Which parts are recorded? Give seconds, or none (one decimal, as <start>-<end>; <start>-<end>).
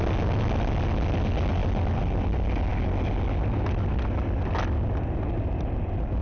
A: 0.0-6.2